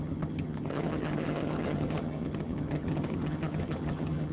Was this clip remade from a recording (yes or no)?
yes